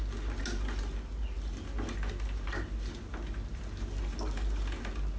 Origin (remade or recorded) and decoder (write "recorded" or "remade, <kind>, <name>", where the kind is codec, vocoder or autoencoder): recorded